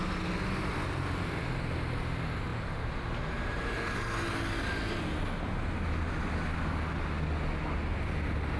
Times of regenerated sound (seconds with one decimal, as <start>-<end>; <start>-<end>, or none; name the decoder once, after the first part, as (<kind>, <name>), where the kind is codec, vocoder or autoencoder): none